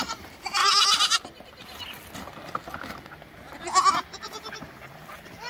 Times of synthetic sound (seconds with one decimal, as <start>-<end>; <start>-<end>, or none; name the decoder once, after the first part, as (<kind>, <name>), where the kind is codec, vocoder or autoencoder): 0.0-0.6 (vocoder, BigVGAN v2); 3.9-5.5